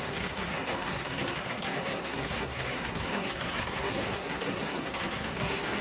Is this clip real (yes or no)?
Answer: no